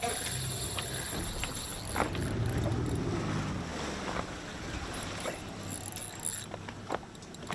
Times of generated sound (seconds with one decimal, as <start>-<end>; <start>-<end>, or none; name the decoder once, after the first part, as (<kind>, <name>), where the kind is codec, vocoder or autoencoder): 4.5-5.3 (vocoder, BigVGAN v2)